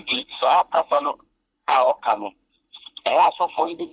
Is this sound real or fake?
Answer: fake